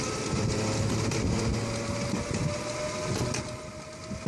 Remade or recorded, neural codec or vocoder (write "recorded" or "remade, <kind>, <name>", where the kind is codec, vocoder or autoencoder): recorded